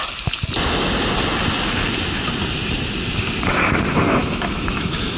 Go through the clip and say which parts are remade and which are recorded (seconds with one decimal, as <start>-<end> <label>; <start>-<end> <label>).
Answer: 0.0-4.2 recorded; 4.2-5.2 remade